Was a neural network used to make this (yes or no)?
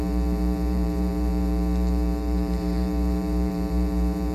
yes